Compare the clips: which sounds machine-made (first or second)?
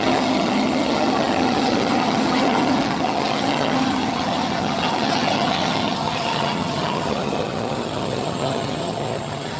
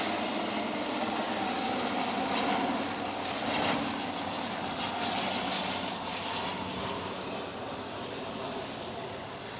first